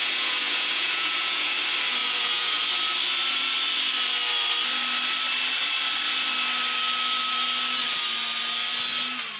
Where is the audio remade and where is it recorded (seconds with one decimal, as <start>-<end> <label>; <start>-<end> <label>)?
0.0-1.5 remade; 1.5-2.0 recorded; 2.0-2.7 remade; 2.7-9.4 recorded